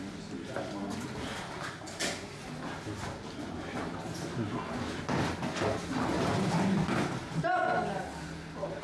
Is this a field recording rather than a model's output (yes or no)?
yes